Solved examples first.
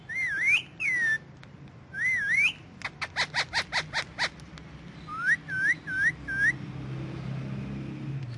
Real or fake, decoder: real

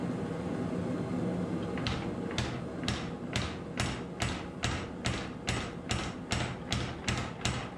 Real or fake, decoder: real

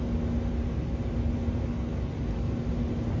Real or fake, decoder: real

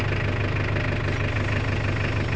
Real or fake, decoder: real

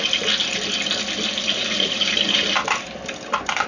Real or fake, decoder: real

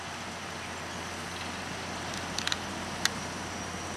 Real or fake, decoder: real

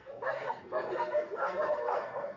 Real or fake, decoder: fake, codec, SNAC